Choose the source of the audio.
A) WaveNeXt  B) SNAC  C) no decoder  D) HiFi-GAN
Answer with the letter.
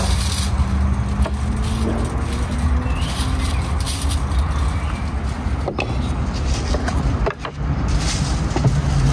C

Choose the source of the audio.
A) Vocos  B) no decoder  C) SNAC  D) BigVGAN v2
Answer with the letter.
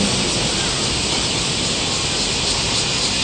B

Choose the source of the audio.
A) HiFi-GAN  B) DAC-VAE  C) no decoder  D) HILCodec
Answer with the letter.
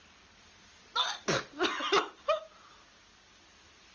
C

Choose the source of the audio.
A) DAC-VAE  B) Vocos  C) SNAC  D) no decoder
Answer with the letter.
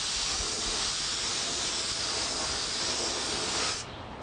D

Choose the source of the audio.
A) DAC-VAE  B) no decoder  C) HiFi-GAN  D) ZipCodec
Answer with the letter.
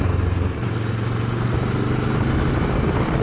B